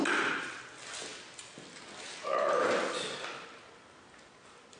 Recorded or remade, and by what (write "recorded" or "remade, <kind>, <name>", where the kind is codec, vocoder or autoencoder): recorded